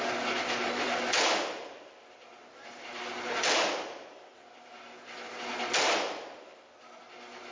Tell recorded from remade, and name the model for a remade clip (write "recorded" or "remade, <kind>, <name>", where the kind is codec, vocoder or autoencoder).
recorded